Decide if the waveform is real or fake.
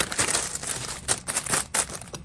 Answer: real